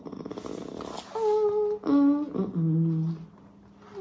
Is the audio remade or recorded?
recorded